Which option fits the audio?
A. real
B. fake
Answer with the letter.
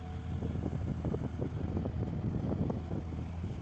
A